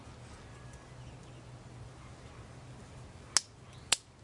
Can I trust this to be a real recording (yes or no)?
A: yes